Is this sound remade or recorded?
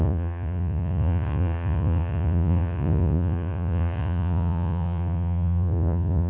remade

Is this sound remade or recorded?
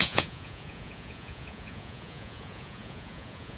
remade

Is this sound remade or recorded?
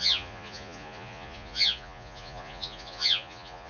remade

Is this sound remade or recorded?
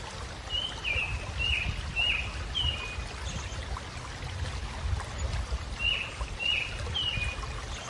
recorded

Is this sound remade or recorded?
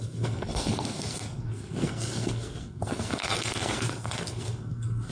remade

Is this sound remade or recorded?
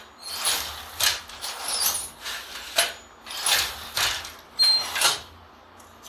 recorded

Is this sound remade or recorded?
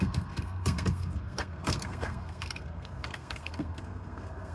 remade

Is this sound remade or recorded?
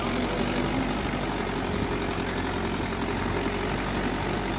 recorded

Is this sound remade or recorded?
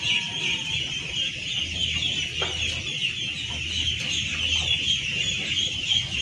recorded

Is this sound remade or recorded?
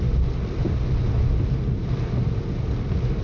recorded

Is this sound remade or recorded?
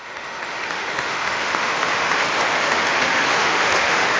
remade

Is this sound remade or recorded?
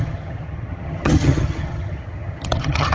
remade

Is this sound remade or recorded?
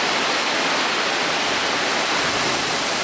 recorded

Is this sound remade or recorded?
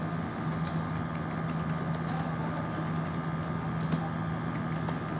recorded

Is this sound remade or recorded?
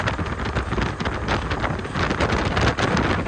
recorded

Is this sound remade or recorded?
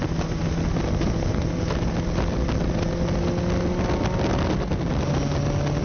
recorded